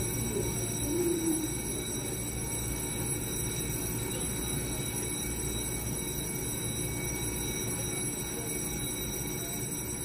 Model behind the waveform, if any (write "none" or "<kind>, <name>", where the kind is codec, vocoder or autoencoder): none